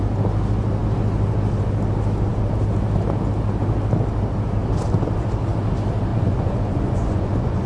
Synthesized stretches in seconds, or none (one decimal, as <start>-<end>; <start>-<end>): 6.1-7.7